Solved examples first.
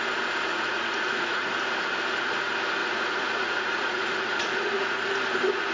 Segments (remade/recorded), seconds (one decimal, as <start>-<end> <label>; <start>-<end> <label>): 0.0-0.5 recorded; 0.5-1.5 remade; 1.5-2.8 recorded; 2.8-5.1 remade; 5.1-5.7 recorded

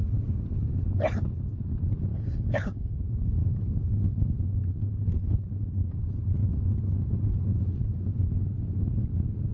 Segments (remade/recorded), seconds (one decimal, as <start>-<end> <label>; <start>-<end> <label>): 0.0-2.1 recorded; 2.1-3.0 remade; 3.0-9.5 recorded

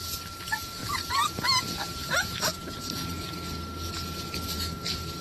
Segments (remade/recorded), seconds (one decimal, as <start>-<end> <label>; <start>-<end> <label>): 0.0-5.2 recorded